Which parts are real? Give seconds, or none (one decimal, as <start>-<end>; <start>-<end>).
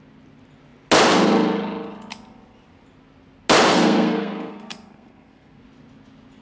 0.0-3.7; 5.6-6.4